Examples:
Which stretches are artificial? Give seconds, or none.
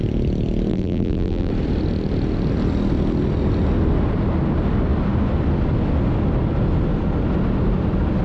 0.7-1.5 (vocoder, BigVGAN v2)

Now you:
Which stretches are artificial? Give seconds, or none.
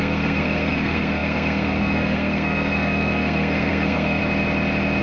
0.0-4.2 (codec, SNAC)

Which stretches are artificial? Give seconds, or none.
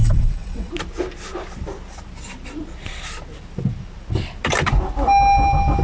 0.0-0.7 (vocoder, WaveNeXt)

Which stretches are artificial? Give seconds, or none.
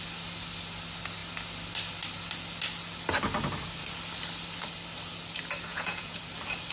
5.7-6.2 (vocoder, Vocos)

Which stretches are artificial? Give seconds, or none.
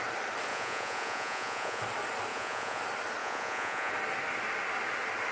0.5-1.8 (vocoder, Vocos); 2.3-2.8; 3.2-3.9